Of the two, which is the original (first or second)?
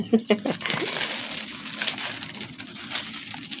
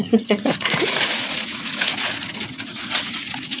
first